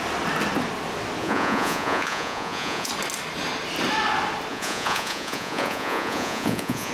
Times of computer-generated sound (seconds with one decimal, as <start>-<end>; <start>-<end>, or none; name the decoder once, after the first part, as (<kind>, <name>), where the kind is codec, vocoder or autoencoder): 1.2-2.9 (vocoder, Vocos); 4.5-6.9